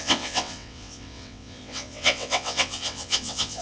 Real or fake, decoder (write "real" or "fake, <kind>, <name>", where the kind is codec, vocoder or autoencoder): fake, vocoder, WaveNeXt